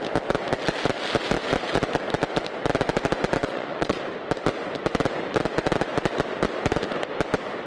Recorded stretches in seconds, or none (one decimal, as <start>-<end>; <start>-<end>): 0.0-3.4; 4.0-7.7